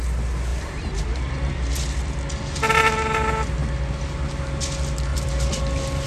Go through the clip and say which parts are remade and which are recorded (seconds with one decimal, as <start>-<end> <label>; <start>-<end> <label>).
0.0-0.5 recorded; 0.5-2.2 remade; 2.2-5.1 recorded; 5.1-5.6 remade; 5.6-6.1 recorded